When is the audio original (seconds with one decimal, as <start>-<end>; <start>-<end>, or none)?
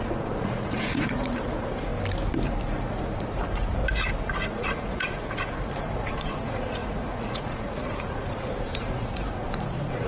1.9-2.7; 3.8-4.5